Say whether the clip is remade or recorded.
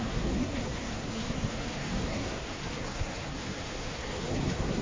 remade